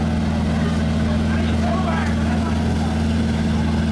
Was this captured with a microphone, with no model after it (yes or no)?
yes